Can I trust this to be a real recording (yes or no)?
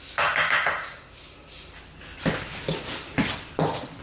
yes